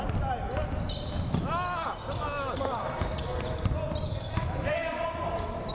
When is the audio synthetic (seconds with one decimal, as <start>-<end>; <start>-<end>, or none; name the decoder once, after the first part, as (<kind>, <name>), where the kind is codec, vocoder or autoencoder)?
none